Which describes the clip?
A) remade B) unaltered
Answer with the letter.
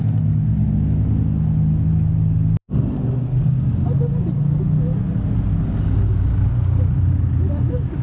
B